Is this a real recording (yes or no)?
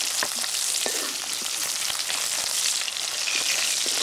yes